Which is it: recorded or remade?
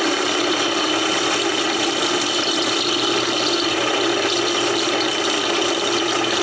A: recorded